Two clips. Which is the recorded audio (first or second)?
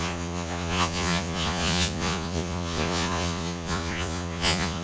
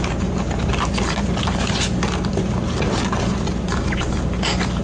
second